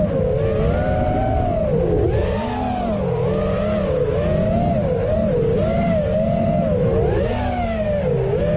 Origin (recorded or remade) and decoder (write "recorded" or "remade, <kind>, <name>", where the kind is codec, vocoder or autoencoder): recorded